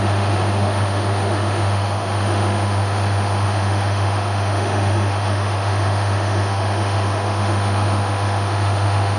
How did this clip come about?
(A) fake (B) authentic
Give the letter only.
A